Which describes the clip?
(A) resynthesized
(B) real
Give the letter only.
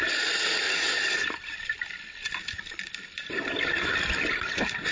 B